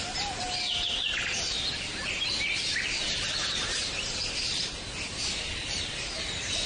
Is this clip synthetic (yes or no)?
no